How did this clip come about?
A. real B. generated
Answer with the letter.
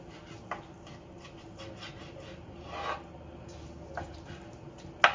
A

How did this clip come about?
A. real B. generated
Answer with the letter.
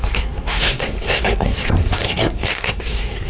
B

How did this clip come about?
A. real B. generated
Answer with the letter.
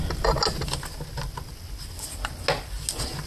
A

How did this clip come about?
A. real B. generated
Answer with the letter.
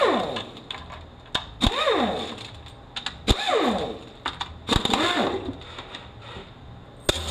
A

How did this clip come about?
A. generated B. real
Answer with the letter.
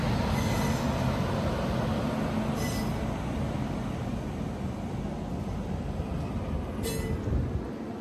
B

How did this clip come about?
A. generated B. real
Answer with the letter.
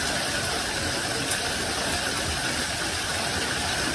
B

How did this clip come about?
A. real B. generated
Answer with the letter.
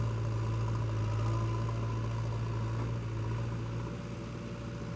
A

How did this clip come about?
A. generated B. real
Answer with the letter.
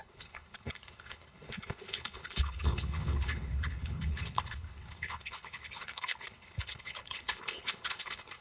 A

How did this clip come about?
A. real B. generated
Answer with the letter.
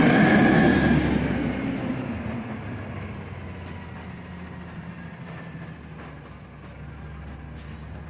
A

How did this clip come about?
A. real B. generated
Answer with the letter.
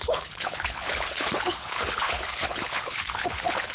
B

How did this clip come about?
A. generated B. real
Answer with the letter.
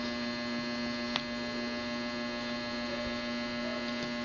B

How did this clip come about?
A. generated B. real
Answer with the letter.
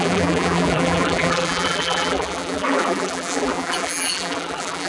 A